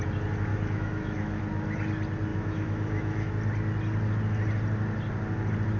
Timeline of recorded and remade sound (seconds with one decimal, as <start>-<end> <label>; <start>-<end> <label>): 0.0-0.5 recorded; 0.5-1.4 remade; 1.4-2.3 recorded; 2.3-3.3 remade; 3.3-5.8 recorded